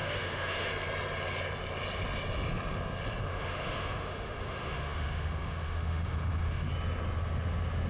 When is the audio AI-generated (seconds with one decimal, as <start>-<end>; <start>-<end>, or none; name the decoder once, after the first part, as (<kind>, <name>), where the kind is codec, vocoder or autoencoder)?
0.0-0.7 (autoencoder, DAC-VAE); 3.3-6.7